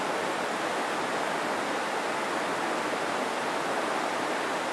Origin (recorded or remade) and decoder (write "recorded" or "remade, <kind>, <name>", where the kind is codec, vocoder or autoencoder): recorded